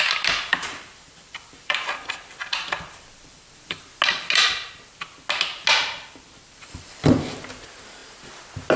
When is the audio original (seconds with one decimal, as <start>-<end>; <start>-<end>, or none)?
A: 0.0-0.5; 3.9-5.8; 7.4-8.8